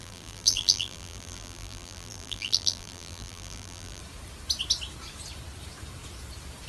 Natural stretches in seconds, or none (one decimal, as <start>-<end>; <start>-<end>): 4.0-6.7